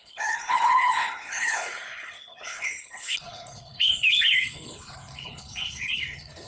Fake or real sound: fake